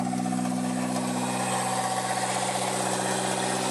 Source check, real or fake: real